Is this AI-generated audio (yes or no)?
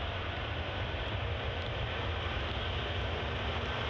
no